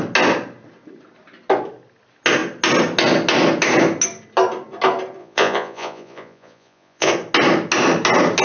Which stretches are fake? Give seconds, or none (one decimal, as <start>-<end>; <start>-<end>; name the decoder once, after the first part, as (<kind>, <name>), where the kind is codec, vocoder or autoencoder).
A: 5.2-7.1 (vocoder, Vocos)